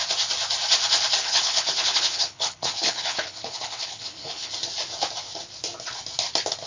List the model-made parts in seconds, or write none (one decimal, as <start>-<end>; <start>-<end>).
1.2-4.5